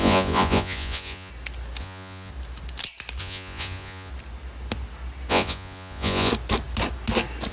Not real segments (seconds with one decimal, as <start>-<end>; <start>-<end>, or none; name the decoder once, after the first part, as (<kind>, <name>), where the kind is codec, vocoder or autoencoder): 0.0-1.3 (vocoder, Vocos); 1.8-2.3; 3.2-4.1; 5.3-6.3

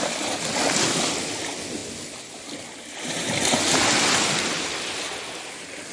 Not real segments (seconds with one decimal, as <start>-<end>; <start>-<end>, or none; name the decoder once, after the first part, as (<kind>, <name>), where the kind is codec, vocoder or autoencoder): none

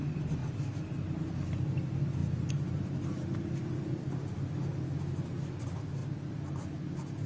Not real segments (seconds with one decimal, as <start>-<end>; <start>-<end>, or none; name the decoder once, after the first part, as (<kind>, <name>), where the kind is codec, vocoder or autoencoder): 0.0-6.0 (vocoder, BigVGAN v2)

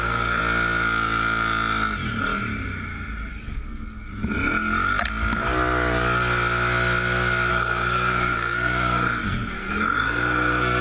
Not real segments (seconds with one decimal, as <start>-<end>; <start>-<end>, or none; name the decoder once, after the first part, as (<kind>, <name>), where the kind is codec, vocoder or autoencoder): 0.0-0.4 (codec, SNAC); 3.3-4.1; 7.5-10.8

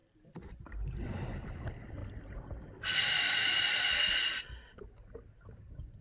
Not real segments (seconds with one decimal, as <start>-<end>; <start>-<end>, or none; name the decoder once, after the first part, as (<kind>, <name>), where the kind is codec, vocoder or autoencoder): 0.0-2.0 (vocoder, BigVGAN v2); 2.8-6.0

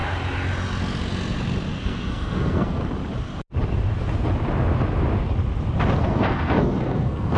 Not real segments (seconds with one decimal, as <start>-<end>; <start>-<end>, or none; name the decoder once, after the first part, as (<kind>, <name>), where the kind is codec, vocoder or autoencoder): 1.7-2.8 (codec, SNAC); 6.0-7.4